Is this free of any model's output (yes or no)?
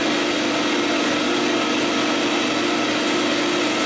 yes